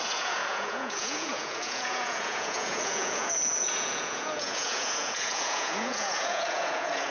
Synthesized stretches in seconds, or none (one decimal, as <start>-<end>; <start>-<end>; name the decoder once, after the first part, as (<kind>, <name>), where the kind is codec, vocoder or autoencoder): 0.0-7.1 (vocoder, Vocos)